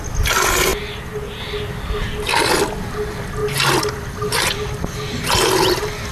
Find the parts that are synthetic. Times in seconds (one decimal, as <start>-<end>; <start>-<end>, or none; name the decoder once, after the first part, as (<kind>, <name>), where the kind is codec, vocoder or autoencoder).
none